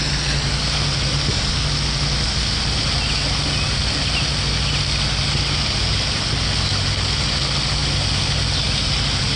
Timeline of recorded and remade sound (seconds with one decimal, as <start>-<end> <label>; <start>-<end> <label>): 0.0-9.4 recorded